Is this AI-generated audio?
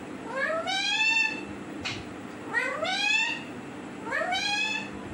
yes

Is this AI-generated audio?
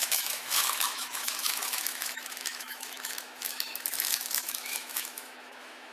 yes